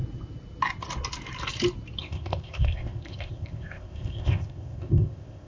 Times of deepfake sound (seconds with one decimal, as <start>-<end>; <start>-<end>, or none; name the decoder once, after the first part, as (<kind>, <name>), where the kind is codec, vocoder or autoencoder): 2.0-5.5 (codec, ZipCodec)